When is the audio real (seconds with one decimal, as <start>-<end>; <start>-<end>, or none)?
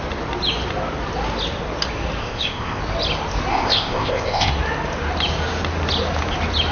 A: 0.0-2.2; 2.8-3.5; 4.5-6.7